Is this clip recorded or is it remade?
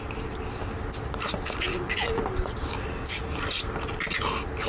recorded